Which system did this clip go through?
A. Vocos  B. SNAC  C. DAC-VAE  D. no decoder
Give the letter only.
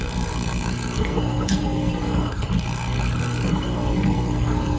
B